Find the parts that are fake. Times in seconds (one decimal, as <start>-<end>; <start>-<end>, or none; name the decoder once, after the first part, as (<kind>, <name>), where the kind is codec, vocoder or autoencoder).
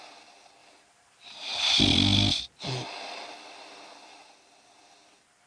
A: none